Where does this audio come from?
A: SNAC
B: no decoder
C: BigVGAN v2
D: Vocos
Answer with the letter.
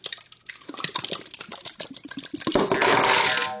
B